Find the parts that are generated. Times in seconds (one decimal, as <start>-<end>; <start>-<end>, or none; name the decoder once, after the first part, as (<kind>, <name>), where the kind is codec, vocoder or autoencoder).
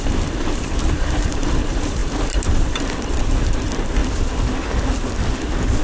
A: 0.0-4.0 (vocoder, BigVGAN v2)